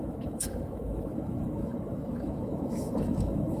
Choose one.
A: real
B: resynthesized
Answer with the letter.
B